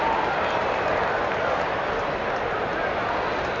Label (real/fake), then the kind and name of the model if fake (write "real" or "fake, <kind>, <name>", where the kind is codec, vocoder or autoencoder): real